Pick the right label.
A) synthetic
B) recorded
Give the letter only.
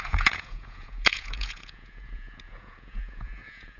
A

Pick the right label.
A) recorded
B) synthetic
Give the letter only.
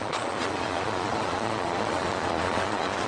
B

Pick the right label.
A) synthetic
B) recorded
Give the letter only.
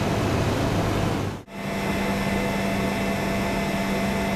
B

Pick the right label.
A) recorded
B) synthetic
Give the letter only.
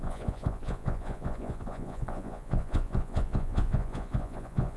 B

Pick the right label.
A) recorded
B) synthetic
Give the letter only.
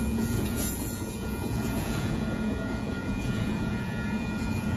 B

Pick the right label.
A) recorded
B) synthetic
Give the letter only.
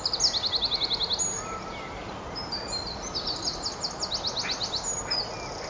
A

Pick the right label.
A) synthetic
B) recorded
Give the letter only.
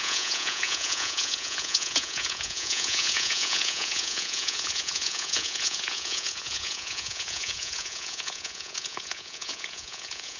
A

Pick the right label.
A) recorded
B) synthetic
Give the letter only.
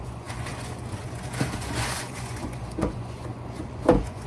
B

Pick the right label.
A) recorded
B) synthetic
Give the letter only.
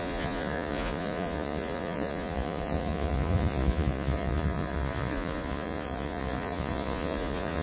B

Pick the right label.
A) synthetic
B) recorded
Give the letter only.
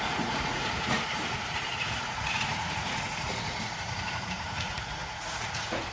A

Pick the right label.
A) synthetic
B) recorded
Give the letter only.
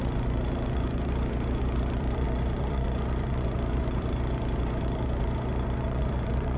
A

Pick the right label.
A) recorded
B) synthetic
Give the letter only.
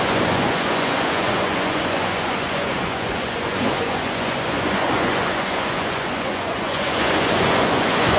B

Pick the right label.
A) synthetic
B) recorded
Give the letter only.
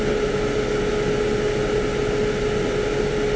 B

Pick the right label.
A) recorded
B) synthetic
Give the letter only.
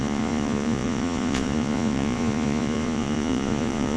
B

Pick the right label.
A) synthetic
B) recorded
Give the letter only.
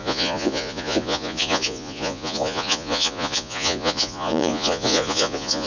A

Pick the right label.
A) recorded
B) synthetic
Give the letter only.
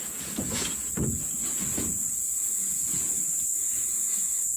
B